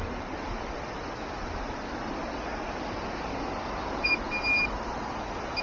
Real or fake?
real